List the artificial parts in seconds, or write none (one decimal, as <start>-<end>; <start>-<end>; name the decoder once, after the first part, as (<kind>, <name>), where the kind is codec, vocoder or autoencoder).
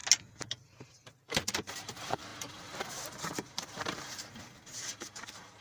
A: 0.5-5.6 (vocoder, BigVGAN v2)